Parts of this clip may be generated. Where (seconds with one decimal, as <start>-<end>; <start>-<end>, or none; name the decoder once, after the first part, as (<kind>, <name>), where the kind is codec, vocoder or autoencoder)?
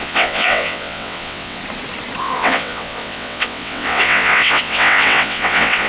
0.0-1.6 (vocoder, WaveNeXt); 2.2-5.9